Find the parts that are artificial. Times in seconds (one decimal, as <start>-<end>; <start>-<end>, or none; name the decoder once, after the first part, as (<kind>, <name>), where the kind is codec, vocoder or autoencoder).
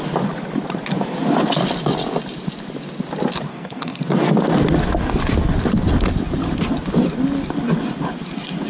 3.5-4.0 (codec, SNAC)